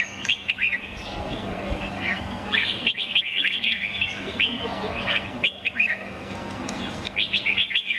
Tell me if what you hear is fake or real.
fake